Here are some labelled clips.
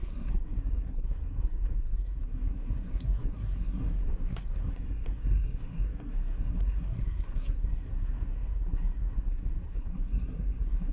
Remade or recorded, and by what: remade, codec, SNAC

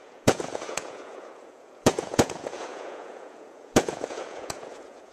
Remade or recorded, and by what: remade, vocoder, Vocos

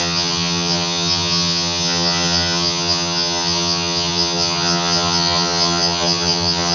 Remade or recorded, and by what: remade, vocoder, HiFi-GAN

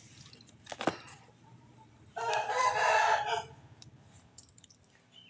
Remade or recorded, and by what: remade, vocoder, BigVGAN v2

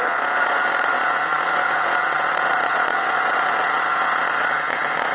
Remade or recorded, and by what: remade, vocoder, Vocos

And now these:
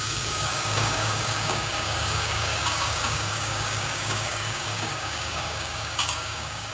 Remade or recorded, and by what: remade, codec, DAC